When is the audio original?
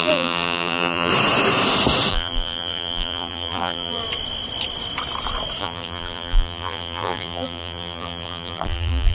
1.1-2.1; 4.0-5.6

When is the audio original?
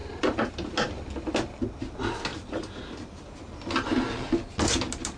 0.5-2.3; 3.5-5.2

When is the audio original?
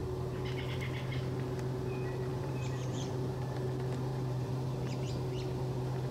0.0-2.3; 3.1-4.1; 5.1-6.1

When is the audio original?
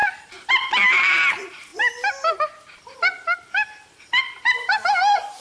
0.0-0.5; 1.7-4.2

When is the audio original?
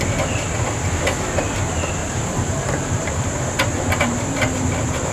0.0-2.0; 3.5-5.1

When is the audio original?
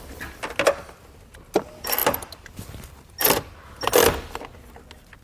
0.0-2.0; 3.8-5.2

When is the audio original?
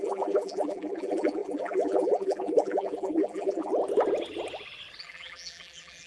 3.7-5.0